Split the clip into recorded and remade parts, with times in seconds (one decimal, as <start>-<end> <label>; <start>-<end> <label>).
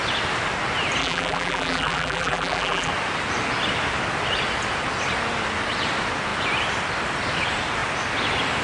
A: 0.0-1.0 recorded; 1.0-2.9 remade; 2.9-8.6 recorded